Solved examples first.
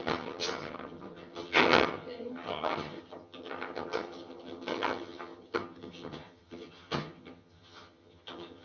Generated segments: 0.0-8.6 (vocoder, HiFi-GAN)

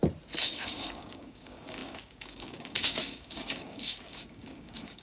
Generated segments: 0.6-5.0 (codec, DAC)

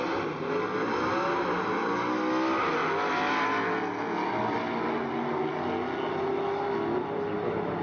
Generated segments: none

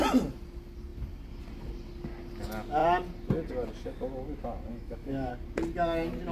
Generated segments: 4.7-5.3 (autoencoder, DAC-VAE)

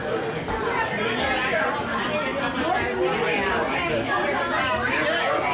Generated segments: none